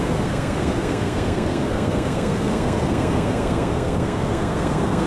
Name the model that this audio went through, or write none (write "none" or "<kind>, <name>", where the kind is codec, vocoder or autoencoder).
codec, SNAC